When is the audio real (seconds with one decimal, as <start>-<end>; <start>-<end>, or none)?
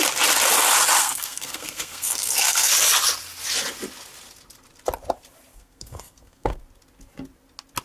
0.0-1.0; 2.7-5.5; 6.6-7.8